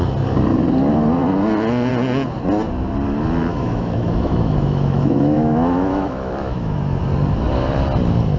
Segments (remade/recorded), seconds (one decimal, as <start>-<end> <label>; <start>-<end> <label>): 0.0-3.5 recorded; 3.5-7.0 remade; 7.0-8.4 recorded